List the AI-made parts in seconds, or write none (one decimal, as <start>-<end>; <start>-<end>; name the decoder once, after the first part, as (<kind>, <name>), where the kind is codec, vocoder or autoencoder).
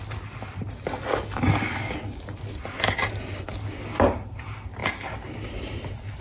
1.1-2.2 (codec, DAC)